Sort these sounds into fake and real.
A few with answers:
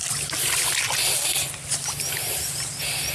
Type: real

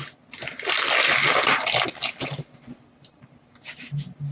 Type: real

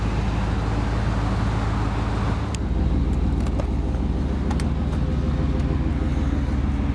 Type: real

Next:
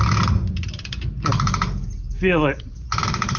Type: real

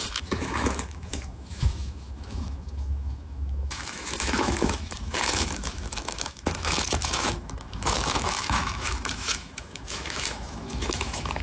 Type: fake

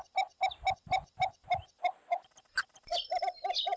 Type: real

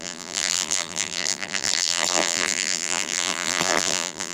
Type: fake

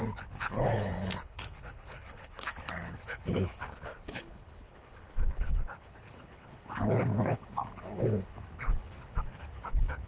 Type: fake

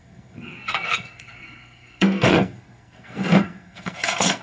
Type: fake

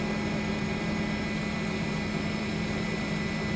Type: real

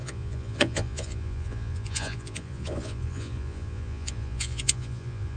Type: fake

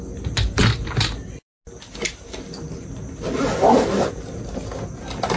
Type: real